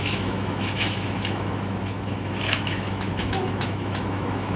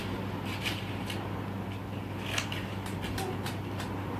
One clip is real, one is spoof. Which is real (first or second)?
second